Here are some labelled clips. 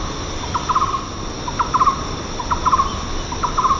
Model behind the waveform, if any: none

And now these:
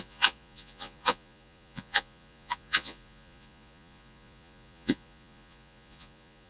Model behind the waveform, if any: vocoder, Vocos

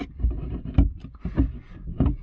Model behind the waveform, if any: none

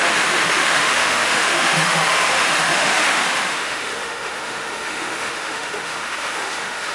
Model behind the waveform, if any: autoencoder, DAC-VAE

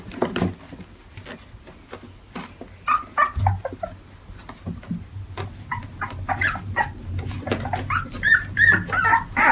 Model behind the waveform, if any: none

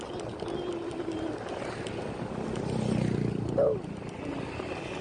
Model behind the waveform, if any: none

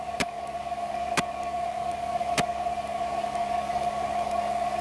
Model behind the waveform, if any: codec, DAC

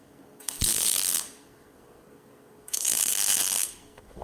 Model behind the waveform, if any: codec, SNAC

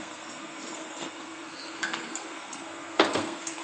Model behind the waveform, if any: codec, SNAC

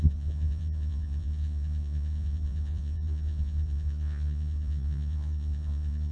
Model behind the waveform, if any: vocoder, Vocos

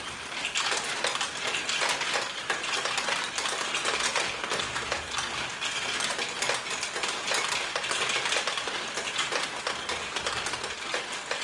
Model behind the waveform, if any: none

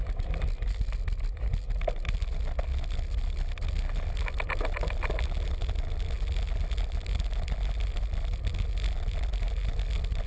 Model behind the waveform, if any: none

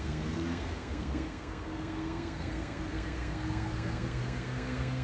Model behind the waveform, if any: codec, SNAC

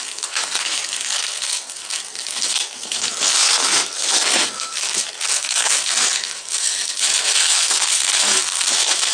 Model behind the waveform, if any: codec, SNAC